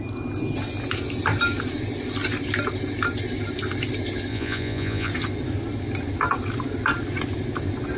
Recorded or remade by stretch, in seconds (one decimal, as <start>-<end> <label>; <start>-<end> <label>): 0.0-4.3 recorded; 4.3-5.1 remade; 5.1-8.0 recorded